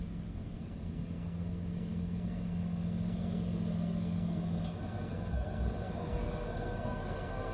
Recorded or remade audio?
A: remade